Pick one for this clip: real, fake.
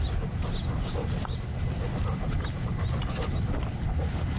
real